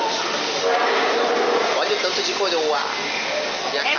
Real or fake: real